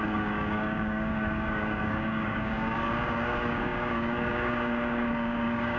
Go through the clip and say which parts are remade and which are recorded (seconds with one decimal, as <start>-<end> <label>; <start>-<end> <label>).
0.0-5.8 remade